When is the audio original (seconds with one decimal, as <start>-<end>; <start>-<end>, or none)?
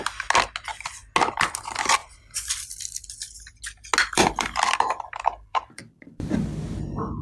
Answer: 0.0-2.0; 3.4-4.0; 6.4-7.2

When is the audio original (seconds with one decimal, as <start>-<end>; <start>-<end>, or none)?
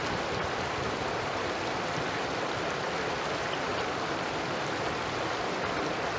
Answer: 3.7-6.2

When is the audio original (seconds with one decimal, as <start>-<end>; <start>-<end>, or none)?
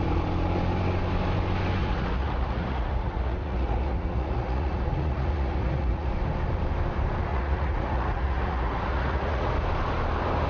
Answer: 0.0-1.8; 6.1-7.3; 9.5-10.5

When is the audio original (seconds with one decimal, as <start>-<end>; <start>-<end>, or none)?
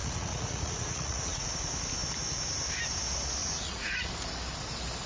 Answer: 1.5-3.4; 4.1-5.1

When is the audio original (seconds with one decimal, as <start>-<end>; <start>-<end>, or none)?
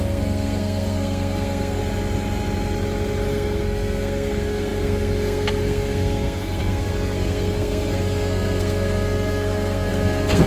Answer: 1.8-3.3